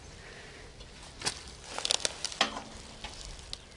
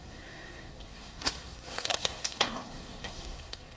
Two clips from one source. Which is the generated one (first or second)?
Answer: second